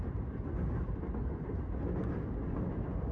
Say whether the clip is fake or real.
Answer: real